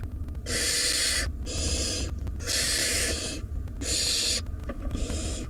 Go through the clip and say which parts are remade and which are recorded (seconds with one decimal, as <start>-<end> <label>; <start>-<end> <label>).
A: 0.0-2.8 recorded; 2.8-3.5 remade; 3.5-4.6 recorded; 4.6-5.5 remade